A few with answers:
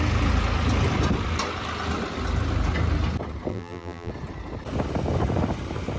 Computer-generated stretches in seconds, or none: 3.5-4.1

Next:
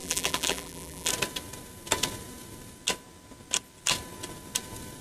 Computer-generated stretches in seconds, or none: 0.0-1.1

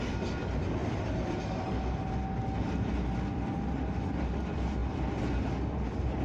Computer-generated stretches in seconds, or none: none

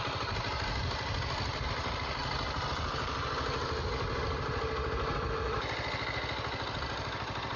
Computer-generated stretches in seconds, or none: none